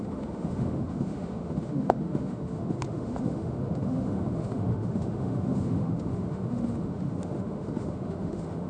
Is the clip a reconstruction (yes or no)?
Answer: yes